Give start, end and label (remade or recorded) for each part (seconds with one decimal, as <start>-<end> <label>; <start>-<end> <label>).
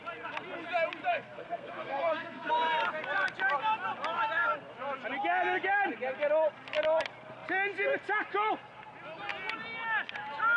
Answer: 0.0-1.1 recorded; 1.1-2.5 remade; 2.5-10.6 recorded